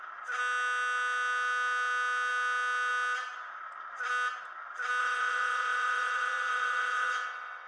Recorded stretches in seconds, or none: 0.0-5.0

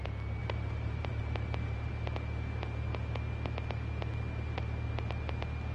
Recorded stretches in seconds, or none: 0.0-0.4; 1.9-5.7